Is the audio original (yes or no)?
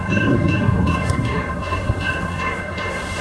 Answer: no